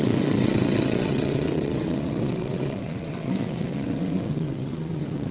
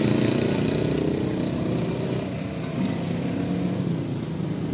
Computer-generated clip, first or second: first